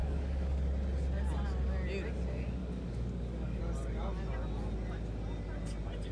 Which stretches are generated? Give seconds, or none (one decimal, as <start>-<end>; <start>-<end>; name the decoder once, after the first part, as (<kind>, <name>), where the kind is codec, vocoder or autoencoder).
0.0-0.6 (codec, DAC); 2.6-3.6